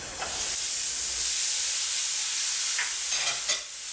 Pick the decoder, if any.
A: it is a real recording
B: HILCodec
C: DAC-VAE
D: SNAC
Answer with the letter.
A